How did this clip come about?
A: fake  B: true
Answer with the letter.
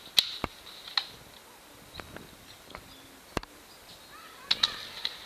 B